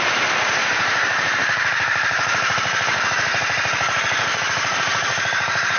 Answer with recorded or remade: remade